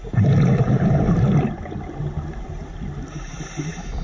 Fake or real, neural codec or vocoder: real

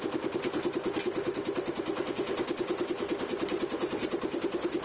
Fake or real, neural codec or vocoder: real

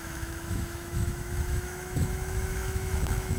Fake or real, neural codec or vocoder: fake, autoencoder, DAC-VAE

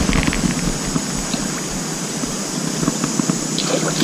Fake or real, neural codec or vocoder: real